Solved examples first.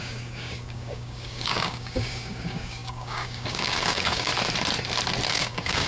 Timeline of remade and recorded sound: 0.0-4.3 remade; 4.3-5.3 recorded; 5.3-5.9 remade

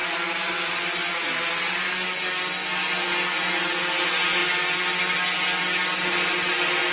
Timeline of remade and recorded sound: 0.0-6.9 recorded

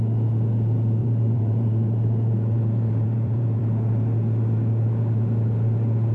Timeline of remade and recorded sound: 0.0-1.0 recorded; 1.0-3.6 remade; 3.6-6.1 recorded

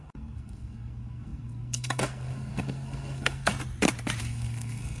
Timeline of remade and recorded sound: 0.0-3.5 remade; 3.5-4.2 recorded; 4.2-5.0 remade

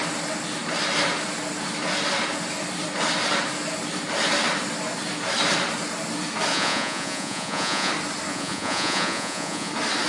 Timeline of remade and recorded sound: 0.0-6.5 recorded; 6.5-7.9 remade; 7.9-8.3 recorded; 8.3-9.7 remade; 9.7-10.1 recorded

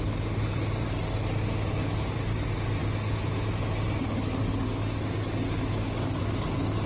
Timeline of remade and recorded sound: 0.0-6.9 recorded

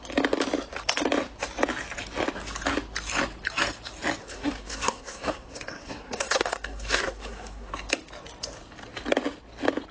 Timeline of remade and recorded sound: 0.0-4.2 recorded; 4.2-7.7 remade; 7.7-9.9 recorded